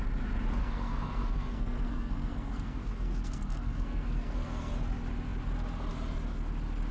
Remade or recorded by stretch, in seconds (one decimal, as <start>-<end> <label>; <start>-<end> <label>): 0.0-0.6 recorded; 0.6-4.7 remade; 4.7-6.9 recorded